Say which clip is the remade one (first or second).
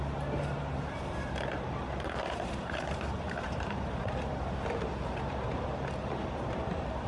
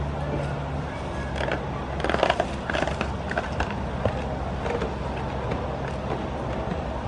first